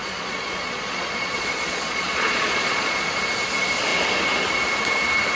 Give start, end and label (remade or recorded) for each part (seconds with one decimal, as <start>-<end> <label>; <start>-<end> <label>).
0.0-3.2 remade; 3.2-5.4 recorded